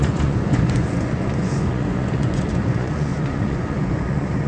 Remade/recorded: remade